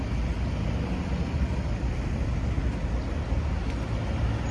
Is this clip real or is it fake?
real